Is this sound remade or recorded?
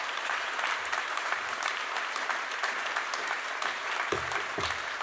remade